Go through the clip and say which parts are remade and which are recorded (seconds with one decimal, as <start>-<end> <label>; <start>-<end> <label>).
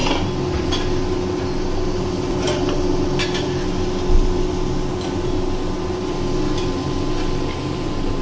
0.0-8.2 recorded